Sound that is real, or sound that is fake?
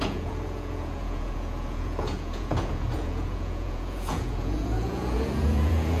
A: fake